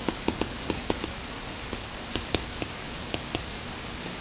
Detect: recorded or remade remade